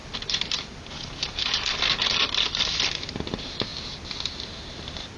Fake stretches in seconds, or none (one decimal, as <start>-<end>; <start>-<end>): none